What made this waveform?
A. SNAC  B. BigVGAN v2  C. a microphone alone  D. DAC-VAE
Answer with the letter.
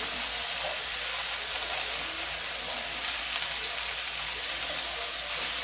C